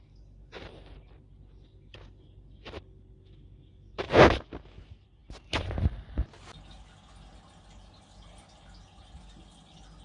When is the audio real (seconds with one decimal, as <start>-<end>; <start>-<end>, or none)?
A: 0.0-10.0